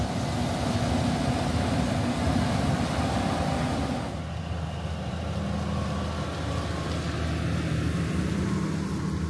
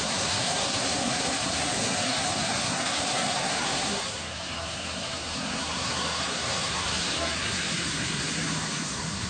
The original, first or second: first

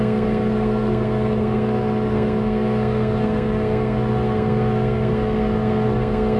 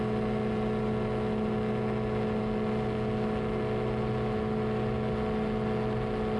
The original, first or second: second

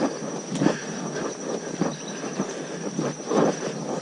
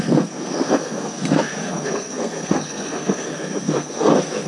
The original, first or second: first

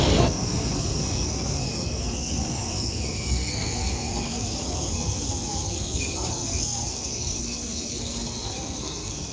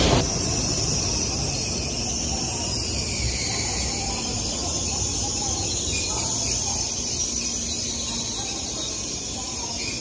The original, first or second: second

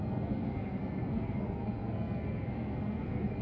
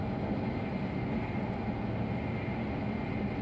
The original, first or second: second